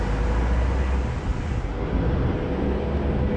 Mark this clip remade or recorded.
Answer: recorded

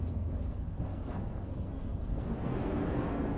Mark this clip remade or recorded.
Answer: remade